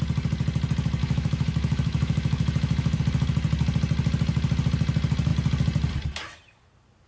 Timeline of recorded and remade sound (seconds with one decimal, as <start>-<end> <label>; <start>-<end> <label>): 0.0-1.0 recorded; 1.0-3.0 remade; 3.0-7.1 recorded